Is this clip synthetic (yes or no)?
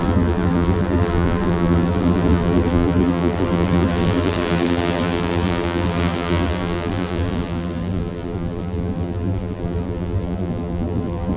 yes